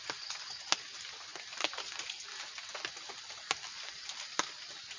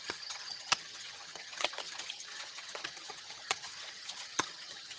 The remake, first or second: second